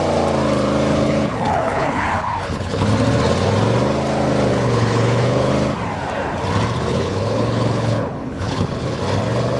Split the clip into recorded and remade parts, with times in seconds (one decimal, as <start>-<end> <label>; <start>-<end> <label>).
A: 0.0-0.9 recorded; 0.9-2.9 remade; 2.9-4.5 recorded; 4.5-5.5 remade; 5.5-6.9 recorded; 6.9-9.0 remade; 9.0-9.6 recorded